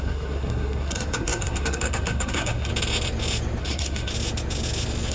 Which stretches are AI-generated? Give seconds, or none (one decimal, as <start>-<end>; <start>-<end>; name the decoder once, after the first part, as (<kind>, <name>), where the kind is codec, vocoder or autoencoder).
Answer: 0.0-2.7 (codec, SNAC); 3.6-4.1